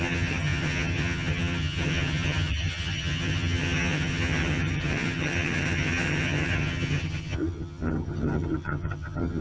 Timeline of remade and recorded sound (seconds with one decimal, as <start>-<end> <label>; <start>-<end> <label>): 0.0-9.4 remade